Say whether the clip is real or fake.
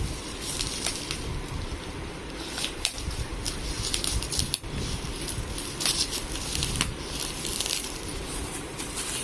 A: fake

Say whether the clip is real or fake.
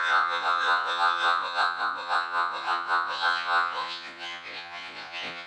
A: fake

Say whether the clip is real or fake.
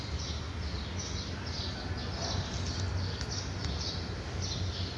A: real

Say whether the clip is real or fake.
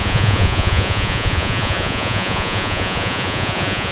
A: fake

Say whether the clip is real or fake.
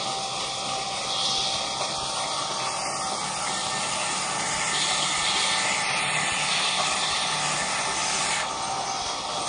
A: real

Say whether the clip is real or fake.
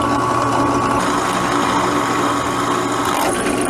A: real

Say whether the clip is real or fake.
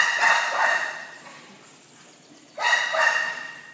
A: real